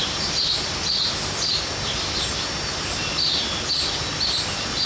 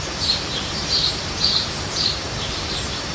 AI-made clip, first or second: second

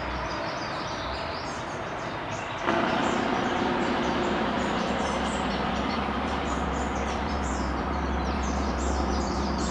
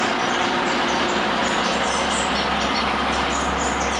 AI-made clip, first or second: first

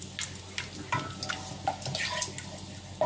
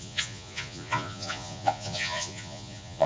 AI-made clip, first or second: second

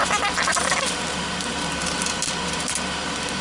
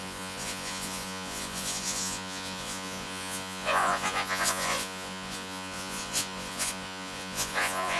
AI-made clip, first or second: second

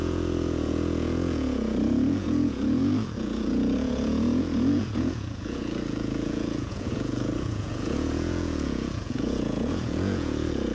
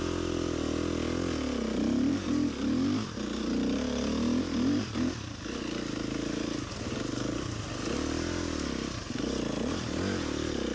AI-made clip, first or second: first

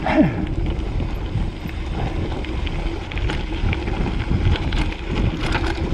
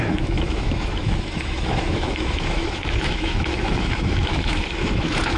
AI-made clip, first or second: second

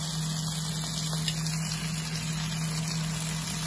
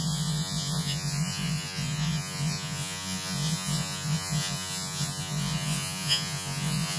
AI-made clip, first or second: second